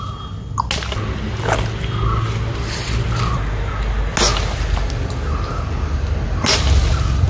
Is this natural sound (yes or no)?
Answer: yes